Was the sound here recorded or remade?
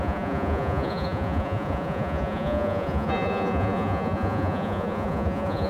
remade